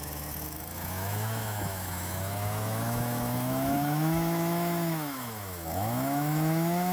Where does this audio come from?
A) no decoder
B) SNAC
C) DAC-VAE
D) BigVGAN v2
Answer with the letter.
C